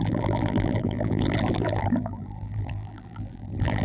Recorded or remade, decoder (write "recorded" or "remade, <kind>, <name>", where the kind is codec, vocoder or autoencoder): remade, vocoder, BigVGAN v2